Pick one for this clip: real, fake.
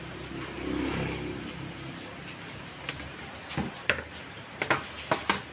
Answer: real